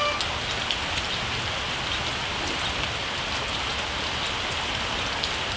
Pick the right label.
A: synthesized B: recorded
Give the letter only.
B